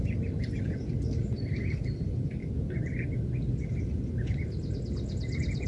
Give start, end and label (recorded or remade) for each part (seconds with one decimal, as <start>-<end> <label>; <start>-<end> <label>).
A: 0.0-5.7 recorded